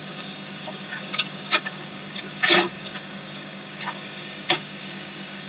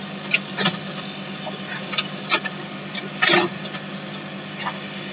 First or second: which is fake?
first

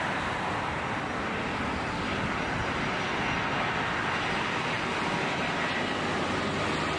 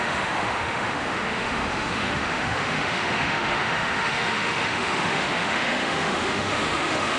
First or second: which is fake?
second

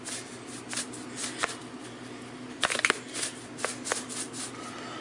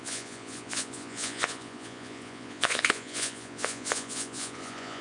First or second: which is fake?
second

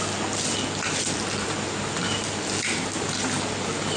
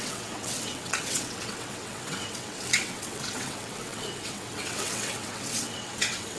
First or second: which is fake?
second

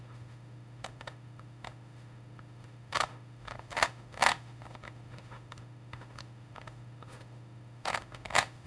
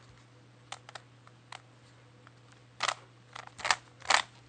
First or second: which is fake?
first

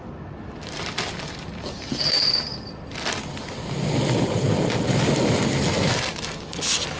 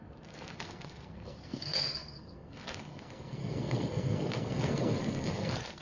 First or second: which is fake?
second